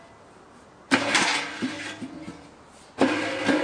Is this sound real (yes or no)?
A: yes